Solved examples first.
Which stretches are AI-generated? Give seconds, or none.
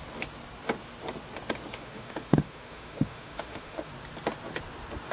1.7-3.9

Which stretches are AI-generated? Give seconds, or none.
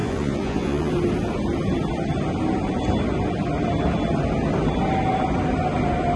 0.0-0.9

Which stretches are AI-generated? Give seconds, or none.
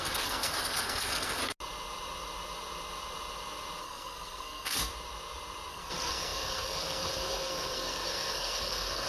0.0-1.4; 3.8-4.9; 5.7-9.1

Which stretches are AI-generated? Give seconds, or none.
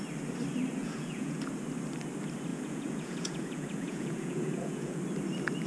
0.8-1.4; 2.5-5.0